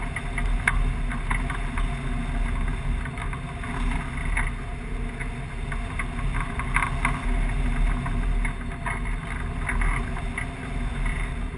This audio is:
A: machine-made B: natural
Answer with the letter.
B